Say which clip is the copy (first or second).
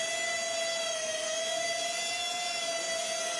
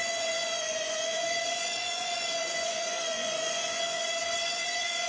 second